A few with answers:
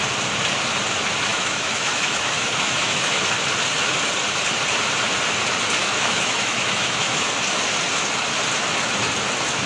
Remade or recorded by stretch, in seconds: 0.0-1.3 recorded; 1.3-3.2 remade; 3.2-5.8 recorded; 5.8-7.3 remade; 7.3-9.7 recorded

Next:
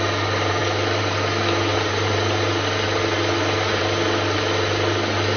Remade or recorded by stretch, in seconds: 0.0-5.4 recorded

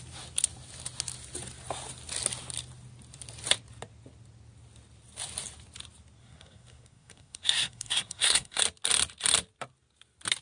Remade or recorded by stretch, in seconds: 0.0-6.2 recorded; 6.2-8.6 remade; 8.6-10.4 recorded

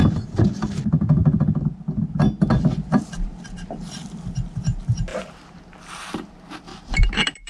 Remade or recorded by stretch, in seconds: 0.0-6.7 recorded; 6.7-7.5 remade

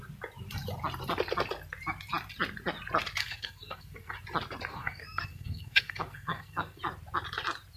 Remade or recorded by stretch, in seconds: 0.0-3.2 recorded; 3.2-4.1 remade; 4.1-4.7 recorded; 4.7-6.8 remade; 6.8-7.8 recorded